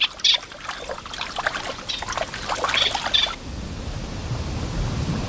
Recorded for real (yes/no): yes